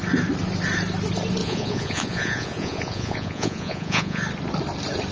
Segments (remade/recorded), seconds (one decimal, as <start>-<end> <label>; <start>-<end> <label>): 0.0-1.4 recorded; 1.4-4.2 remade; 4.2-5.1 recorded